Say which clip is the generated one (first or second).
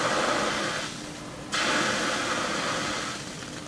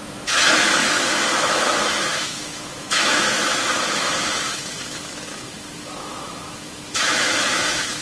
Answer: second